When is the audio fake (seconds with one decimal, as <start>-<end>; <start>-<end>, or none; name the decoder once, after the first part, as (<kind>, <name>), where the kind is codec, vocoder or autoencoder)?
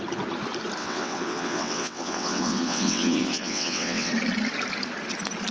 0.8-4.1 (vocoder, WaveNeXt)